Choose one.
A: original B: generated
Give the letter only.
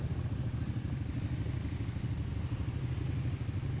A